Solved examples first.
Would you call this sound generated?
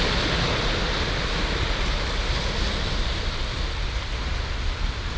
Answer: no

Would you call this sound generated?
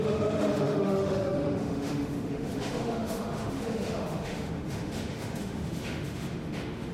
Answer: yes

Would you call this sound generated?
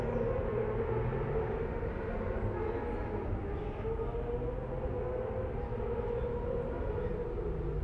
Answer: no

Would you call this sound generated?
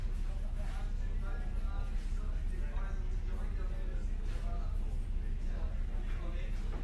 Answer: no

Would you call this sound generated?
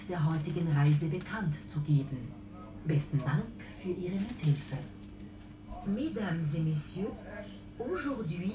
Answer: no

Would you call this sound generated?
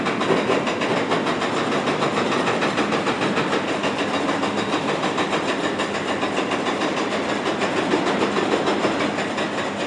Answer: no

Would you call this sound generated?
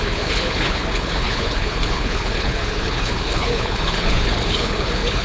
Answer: yes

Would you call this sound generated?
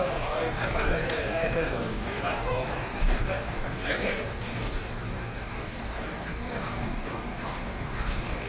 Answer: yes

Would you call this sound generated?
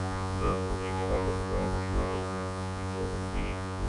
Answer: yes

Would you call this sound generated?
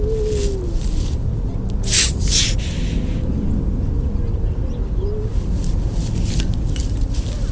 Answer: no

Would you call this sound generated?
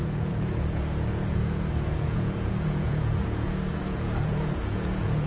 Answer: yes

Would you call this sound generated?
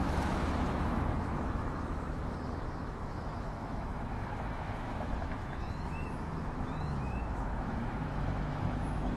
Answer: yes